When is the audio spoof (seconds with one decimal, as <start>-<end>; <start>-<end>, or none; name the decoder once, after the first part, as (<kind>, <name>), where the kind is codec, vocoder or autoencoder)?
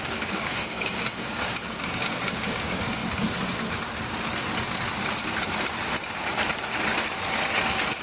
0.0-3.0 (codec, DAC)